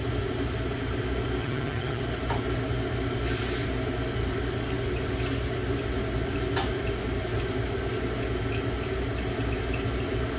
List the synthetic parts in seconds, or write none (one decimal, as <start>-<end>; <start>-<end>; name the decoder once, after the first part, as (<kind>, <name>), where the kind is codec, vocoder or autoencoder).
1.4-2.0 (vocoder, HiFi-GAN)